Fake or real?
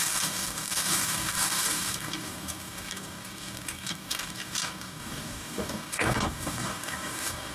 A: fake